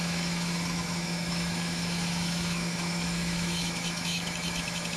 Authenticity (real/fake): fake